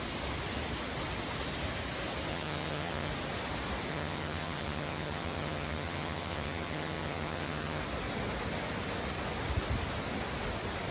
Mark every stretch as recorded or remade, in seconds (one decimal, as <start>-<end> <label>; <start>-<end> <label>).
0.0-2.3 recorded; 2.3-3.1 remade; 3.1-3.9 recorded; 3.9-7.8 remade; 7.8-10.9 recorded